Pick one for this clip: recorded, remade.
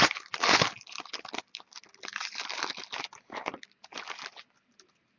recorded